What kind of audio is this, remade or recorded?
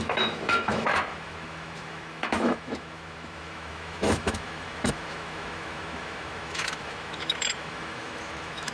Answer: remade